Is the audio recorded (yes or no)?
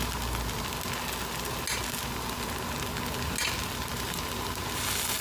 yes